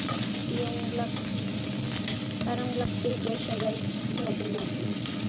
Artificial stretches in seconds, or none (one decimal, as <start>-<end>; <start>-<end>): 0.0-0.4; 3.0-5.3